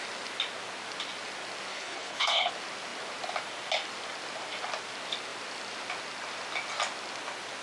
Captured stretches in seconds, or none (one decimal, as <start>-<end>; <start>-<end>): 0.0-1.7; 2.5-7.6